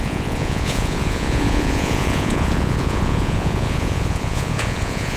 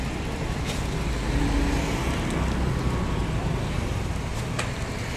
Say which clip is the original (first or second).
second